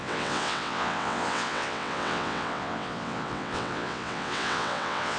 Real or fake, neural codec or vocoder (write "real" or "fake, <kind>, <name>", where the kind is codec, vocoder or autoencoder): fake, vocoder, WaveNeXt